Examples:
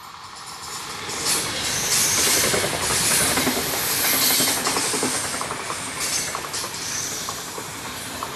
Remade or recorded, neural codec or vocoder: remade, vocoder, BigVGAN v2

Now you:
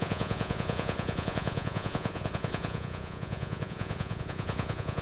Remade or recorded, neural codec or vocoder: remade, vocoder, Vocos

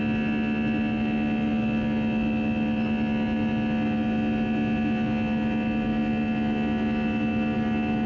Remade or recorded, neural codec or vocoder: recorded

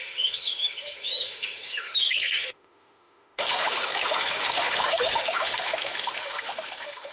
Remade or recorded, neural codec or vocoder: remade, autoencoder, DAC-VAE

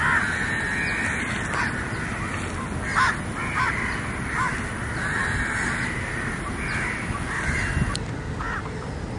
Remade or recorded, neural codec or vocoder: recorded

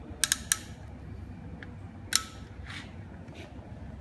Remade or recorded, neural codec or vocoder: recorded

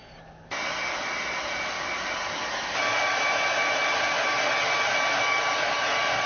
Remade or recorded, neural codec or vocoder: recorded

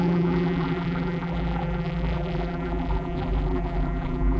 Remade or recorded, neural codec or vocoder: remade, vocoder, BigVGAN v2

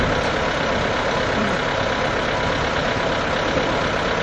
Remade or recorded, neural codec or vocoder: recorded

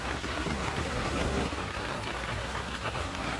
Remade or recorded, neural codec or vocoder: remade, codec, SNAC